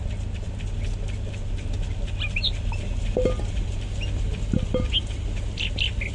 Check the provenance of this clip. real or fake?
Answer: real